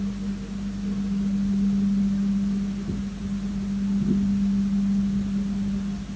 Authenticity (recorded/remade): recorded